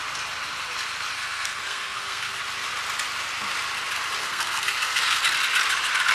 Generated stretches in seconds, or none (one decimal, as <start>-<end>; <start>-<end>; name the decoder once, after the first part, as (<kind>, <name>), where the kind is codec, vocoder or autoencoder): 1.1-2.4 (codec, SNAC); 4.2-5.2